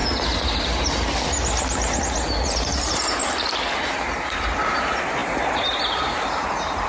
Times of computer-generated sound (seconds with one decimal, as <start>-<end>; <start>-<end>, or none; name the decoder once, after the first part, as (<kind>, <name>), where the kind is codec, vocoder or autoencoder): none